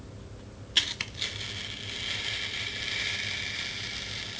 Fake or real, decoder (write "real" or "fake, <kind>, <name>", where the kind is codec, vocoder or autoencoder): real